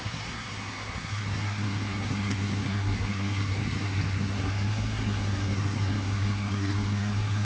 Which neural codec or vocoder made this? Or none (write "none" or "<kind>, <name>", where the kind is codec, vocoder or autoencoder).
codec, SNAC